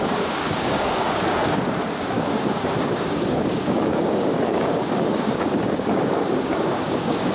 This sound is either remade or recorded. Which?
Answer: remade